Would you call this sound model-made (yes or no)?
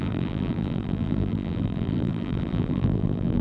yes